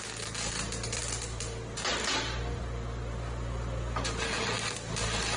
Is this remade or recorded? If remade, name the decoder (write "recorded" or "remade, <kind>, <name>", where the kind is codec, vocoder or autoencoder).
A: recorded